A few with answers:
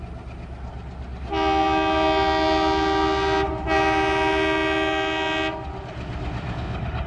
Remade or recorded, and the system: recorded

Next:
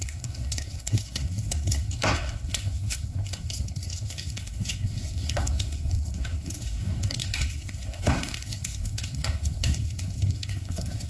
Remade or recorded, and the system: remade, codec, SNAC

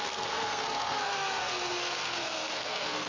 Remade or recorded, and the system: remade, codec, SNAC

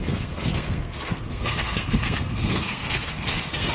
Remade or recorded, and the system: remade, codec, SNAC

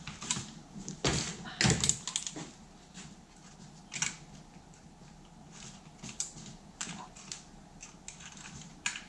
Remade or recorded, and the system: recorded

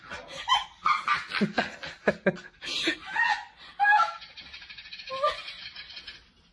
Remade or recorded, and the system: recorded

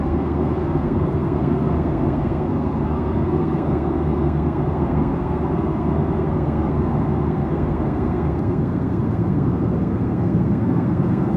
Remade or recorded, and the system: remade, codec, SNAC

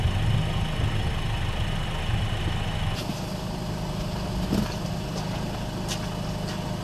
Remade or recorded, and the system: recorded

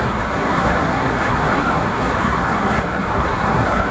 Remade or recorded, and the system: remade, codec, SNAC